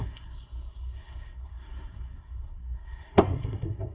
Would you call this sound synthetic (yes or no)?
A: yes